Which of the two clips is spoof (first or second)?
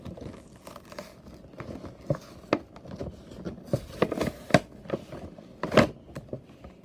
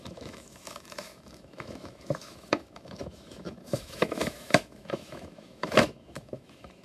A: second